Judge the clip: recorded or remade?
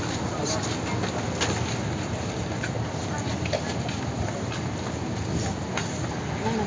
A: recorded